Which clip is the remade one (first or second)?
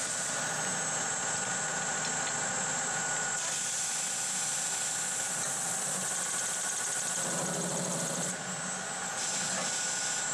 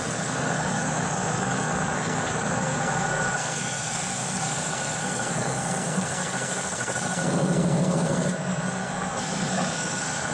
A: second